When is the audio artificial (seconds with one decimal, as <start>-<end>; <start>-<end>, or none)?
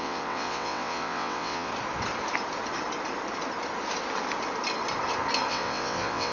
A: 0.0-1.7; 5.5-6.3